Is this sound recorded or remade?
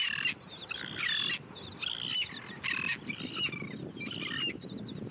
remade